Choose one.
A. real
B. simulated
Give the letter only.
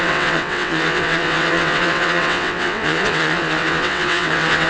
B